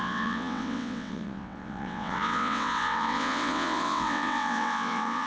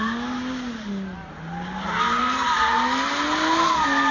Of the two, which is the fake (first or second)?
first